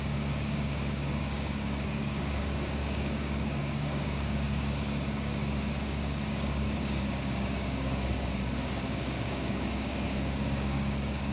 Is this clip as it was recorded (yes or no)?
no